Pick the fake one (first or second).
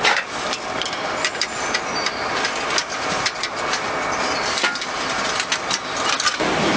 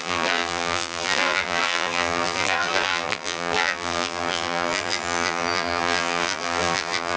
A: second